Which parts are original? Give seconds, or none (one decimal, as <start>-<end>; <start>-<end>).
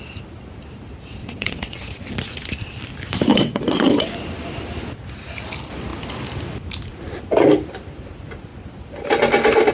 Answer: 0.0-1.2; 1.9-3.3; 4.1-9.7